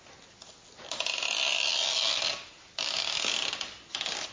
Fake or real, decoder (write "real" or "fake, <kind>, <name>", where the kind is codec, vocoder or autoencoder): real